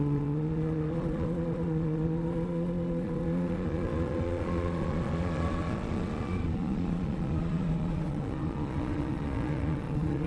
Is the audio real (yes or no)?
no